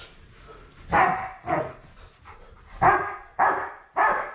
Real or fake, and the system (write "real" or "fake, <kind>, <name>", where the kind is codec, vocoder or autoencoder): real